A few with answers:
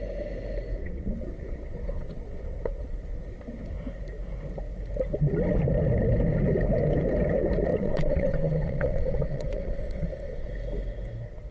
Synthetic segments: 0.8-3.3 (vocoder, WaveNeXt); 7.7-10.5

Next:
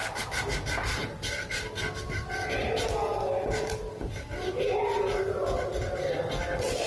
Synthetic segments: none

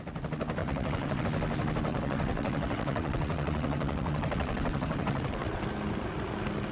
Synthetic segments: 0.6-1.2 (vocoder, WaveNeXt); 1.9-5.6

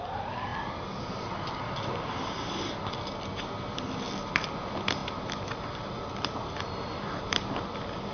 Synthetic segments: none